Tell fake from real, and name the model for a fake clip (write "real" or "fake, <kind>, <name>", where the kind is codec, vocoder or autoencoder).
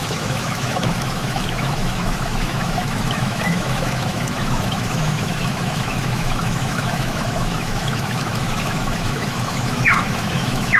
fake, autoencoder, DAC-VAE